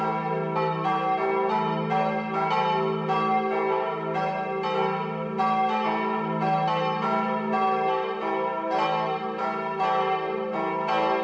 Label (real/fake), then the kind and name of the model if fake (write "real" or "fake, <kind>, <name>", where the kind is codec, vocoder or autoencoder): real